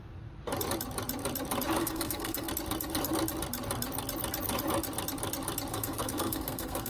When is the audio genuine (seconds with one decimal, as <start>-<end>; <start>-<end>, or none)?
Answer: 0.0-1.8; 2.5-5.7